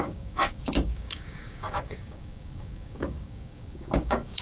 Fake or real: fake